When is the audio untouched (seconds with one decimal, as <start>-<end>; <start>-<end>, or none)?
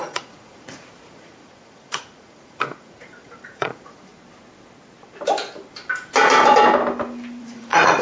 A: 4.1-7.4